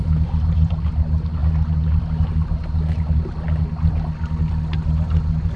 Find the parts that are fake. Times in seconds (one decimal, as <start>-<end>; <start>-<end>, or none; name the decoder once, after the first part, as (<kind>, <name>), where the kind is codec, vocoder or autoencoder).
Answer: none